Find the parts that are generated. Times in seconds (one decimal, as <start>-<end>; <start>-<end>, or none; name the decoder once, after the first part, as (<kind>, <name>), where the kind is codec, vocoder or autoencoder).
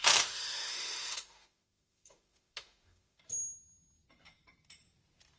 0.0-3.2 (autoencoder, DAC-VAE)